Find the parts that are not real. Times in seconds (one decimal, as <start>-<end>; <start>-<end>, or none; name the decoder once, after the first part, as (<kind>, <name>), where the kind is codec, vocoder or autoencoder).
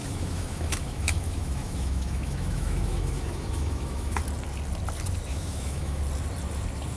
0.0-4.2 (autoencoder, DAC-VAE); 5.3-6.0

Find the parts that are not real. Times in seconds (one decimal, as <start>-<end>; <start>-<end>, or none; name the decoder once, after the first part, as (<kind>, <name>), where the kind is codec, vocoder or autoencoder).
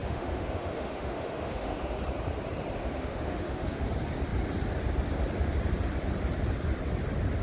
0.0-2.0 (autoencoder, DAC-VAE); 2.8-3.8